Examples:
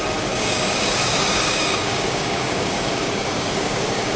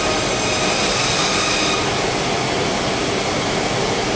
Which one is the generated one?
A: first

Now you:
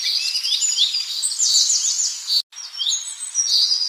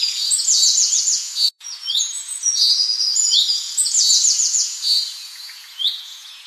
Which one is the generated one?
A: second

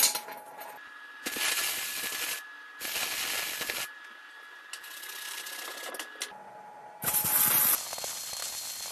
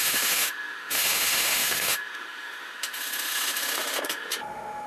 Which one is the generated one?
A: second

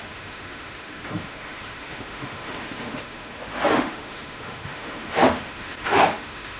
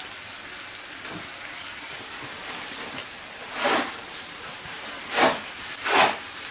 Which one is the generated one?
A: first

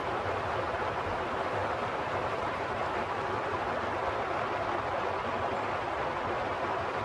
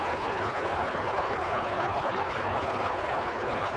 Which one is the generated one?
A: second